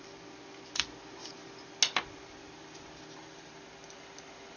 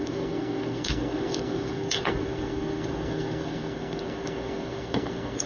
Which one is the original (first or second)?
first